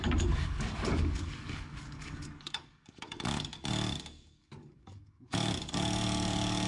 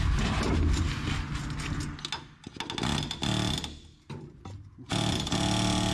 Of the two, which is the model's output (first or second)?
first